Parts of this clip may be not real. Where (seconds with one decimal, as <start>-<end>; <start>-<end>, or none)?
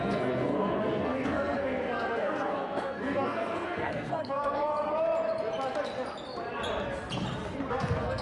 0.0-4.7; 7.7-8.2